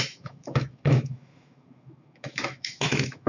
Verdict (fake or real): fake